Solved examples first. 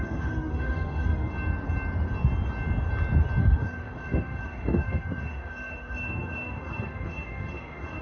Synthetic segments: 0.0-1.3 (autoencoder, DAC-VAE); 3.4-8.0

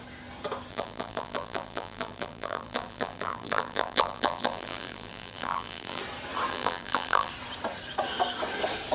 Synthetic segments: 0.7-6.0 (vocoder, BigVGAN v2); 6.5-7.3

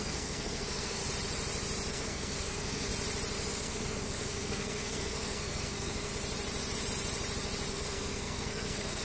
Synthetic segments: 0.0-1.0 (codec, SNAC); 1.9-2.9; 3.5-6.1; 7.7-9.0